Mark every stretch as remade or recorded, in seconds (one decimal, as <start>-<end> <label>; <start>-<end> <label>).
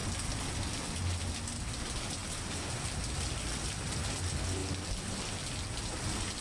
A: 0.0-6.4 recorded